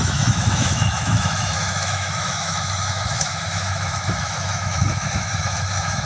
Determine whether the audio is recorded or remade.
remade